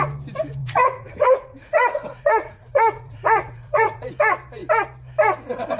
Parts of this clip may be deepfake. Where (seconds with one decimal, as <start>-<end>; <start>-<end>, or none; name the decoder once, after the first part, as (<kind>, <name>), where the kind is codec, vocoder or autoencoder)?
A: 0.6-4.1 (vocoder, Vocos)